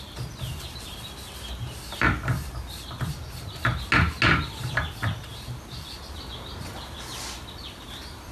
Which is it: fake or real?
real